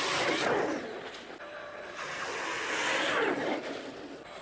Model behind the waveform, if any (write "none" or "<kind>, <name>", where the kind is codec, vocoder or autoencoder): none